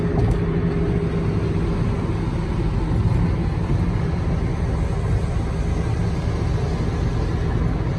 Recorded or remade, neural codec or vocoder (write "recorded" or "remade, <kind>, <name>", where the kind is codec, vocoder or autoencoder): recorded